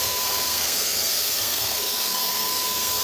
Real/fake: fake